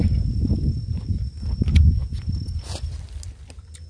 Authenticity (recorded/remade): recorded